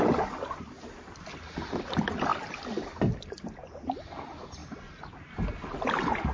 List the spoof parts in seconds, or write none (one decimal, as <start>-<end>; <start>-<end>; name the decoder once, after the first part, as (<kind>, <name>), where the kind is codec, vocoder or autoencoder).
2.3-4.1 (vocoder, BigVGAN v2); 4.6-5.3